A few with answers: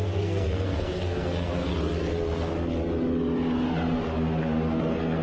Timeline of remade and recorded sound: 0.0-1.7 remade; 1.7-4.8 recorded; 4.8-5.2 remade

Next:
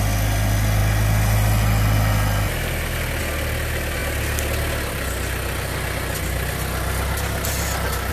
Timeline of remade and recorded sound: 0.0-8.1 recorded